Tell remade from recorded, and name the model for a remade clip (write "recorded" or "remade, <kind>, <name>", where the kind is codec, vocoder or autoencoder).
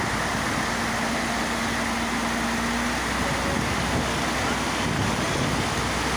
recorded